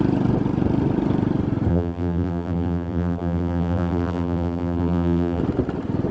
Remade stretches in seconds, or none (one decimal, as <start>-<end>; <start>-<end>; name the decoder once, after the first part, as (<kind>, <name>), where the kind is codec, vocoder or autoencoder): 1.7-5.4 (vocoder, BigVGAN v2)